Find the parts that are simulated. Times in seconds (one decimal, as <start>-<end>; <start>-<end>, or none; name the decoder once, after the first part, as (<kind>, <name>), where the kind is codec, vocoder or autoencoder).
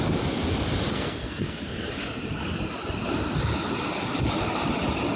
0.9-1.9 (codec, SNAC)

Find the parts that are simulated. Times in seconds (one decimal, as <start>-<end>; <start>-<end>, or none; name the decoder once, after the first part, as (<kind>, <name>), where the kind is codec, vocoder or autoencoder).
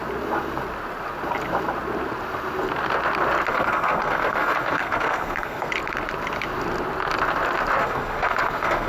3.5-5.7 (codec, SNAC); 7.8-8.9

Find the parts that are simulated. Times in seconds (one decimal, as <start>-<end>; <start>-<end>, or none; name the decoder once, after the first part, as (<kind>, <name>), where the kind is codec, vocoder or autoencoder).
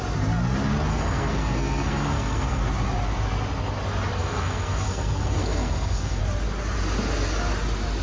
0.9-2.6 (codec, SNAC); 4.2-6.2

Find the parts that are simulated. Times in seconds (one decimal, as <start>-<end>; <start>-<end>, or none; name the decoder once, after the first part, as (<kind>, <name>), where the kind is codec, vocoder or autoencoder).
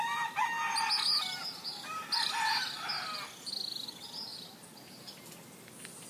none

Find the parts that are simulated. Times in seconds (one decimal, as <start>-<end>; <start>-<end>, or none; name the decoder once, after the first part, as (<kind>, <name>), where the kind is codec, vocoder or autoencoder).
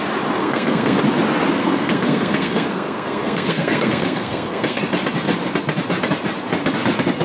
0.4-1.0 (codec, SNAC); 1.6-4.8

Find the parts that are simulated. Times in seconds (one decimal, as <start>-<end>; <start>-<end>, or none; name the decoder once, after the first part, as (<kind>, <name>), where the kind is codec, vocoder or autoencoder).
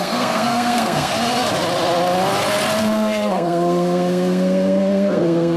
0.0-1.1 (codec, SNAC); 2.8-5.6